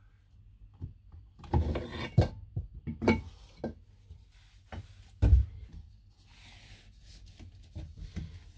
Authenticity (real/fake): real